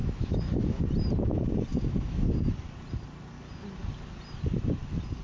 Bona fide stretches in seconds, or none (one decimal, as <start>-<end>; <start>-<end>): 0.8-1.7; 2.3-5.2

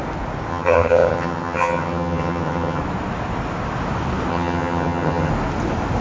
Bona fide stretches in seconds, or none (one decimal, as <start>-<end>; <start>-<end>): 0.0-0.5; 2.8-4.3; 5.3-6.0